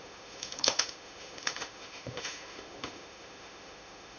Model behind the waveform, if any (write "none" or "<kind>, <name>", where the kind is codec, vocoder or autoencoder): autoencoder, DAC-VAE